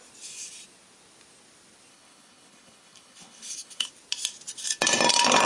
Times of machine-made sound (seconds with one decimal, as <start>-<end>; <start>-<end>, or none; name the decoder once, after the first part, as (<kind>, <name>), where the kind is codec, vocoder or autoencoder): 1.9-3.9 (codec, HILCodec)